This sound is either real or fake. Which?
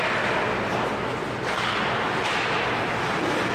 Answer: real